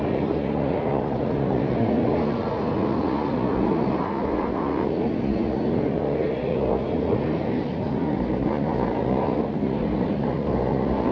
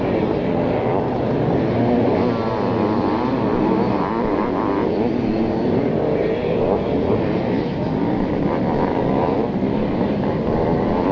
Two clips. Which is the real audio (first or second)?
second